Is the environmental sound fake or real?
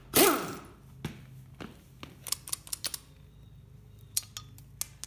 real